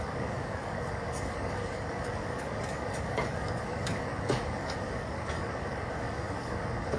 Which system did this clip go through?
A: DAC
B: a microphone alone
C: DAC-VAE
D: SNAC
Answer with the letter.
A